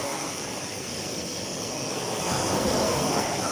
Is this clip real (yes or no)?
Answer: no